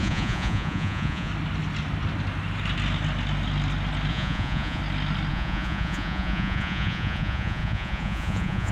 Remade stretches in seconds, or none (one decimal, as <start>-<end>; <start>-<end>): 0.0-1.3; 4.1-4.8; 5.3-8.7